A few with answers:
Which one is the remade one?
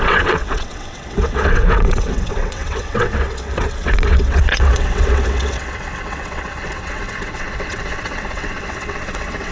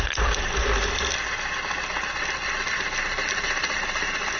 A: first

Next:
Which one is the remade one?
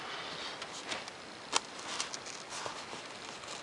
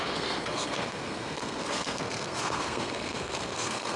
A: second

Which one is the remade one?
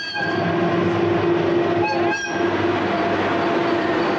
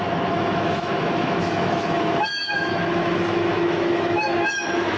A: second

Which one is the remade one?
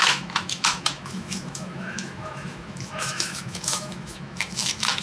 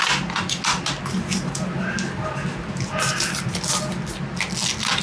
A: first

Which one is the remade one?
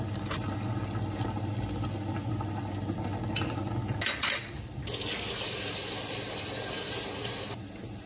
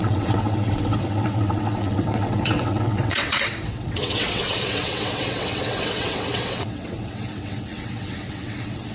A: second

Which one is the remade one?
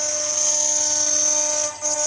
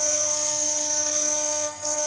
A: second